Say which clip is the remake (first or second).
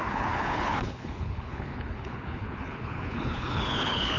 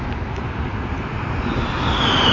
first